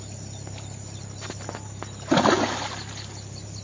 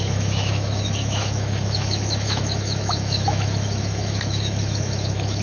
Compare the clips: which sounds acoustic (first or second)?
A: first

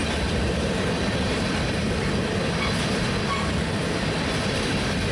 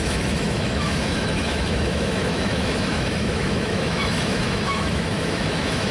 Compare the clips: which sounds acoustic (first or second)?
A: first